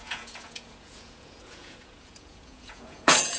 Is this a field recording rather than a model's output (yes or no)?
no